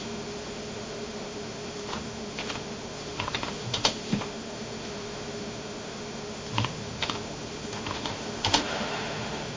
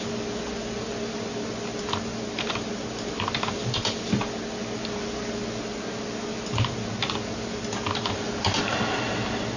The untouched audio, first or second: second